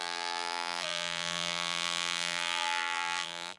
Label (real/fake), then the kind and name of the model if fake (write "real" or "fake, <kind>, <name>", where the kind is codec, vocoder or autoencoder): fake, vocoder, BigVGAN v2